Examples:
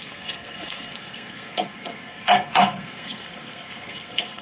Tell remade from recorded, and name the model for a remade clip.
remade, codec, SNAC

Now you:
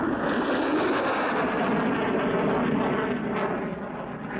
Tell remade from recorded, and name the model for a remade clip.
recorded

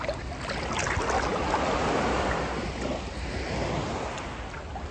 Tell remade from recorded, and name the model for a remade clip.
recorded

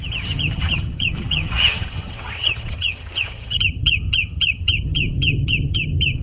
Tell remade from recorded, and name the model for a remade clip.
remade, vocoder, HiFi-GAN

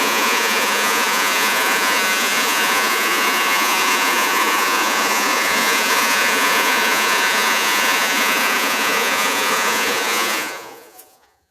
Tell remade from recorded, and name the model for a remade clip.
remade, vocoder, Vocos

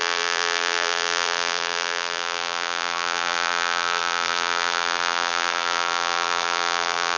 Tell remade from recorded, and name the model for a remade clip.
remade, vocoder, BigVGAN v2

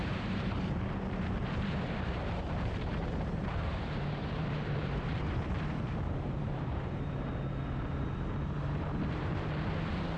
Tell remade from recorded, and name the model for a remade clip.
remade, vocoder, BigVGAN v2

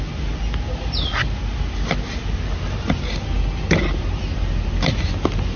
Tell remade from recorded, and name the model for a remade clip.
recorded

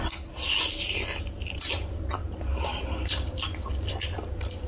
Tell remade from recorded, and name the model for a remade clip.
recorded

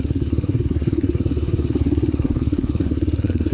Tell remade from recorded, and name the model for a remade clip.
remade, codec, SNAC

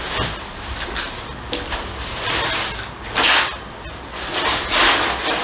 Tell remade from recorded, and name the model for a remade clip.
recorded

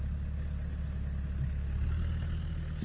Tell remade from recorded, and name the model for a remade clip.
recorded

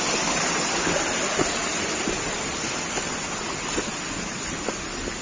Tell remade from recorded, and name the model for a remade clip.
recorded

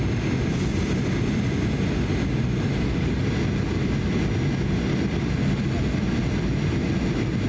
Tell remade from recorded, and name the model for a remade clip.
recorded